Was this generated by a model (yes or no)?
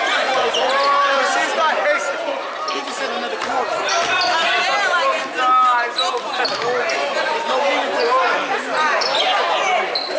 no